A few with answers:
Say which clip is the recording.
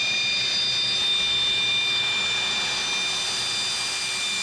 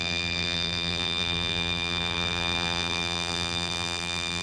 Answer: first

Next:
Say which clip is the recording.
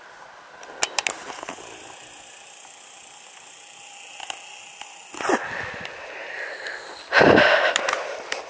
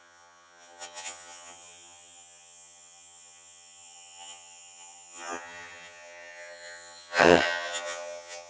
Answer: first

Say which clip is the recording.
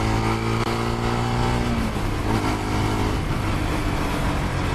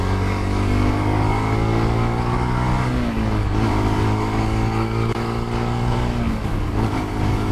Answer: first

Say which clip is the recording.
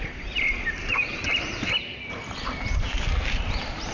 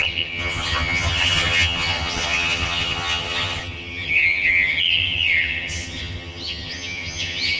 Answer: first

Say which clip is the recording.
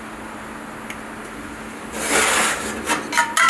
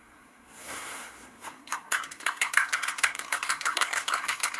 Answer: first